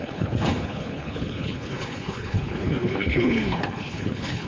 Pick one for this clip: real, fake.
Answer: fake